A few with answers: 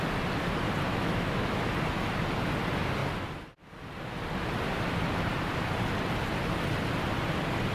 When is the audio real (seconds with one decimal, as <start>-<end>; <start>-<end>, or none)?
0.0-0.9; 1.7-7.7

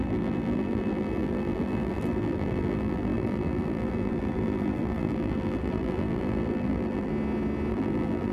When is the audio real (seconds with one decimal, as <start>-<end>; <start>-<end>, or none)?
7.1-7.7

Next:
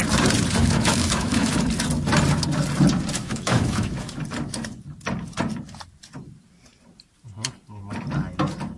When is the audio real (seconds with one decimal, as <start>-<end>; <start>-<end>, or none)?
0.0-0.6; 1.5-3.2; 4.2-8.8

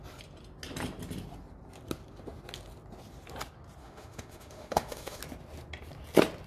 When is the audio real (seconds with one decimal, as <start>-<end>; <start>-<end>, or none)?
0.0-3.8; 5.2-6.5